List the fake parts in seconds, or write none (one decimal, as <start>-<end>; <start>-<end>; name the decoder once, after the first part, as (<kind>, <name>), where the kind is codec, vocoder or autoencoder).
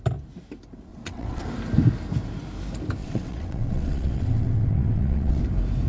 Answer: 0.9-1.4 (vocoder, WaveNeXt); 3.0-5.4